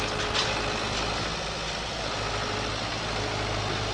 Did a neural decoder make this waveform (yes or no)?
no